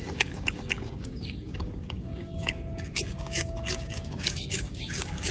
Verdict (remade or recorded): remade